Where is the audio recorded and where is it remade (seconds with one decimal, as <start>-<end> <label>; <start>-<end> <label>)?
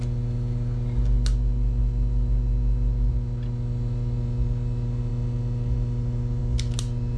0.0-7.2 recorded